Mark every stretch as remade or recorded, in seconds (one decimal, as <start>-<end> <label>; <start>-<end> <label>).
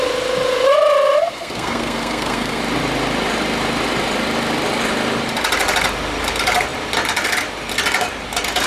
0.0-1.2 recorded; 1.2-2.6 remade; 2.6-8.7 recorded